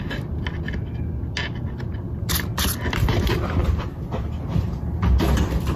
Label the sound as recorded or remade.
recorded